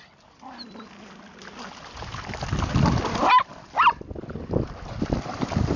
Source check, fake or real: real